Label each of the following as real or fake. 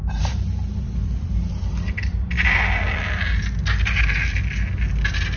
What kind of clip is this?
real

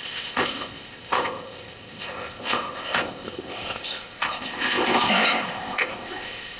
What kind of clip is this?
fake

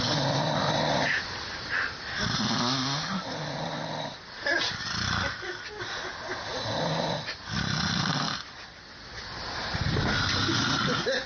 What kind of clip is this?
real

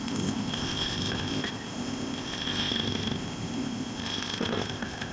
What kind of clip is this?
fake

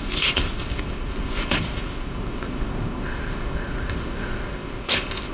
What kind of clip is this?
fake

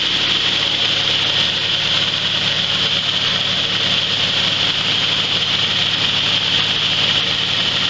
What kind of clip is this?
real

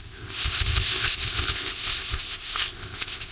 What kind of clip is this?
fake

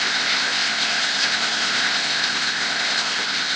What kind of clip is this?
fake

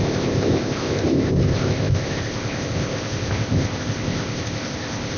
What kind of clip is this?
fake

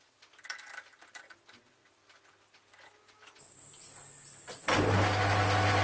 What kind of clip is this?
real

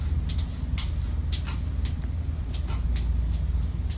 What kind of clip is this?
real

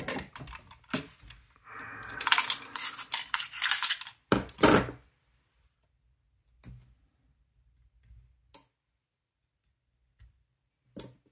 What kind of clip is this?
real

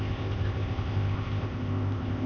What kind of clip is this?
fake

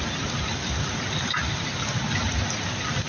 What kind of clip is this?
real